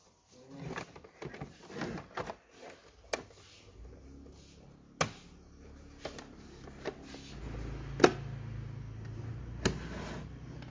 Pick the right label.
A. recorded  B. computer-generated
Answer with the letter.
A